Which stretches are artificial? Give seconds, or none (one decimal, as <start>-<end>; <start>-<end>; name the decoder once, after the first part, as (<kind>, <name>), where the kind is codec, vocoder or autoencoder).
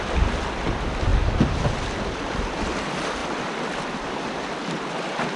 3.2-5.4 (vocoder, BigVGAN v2)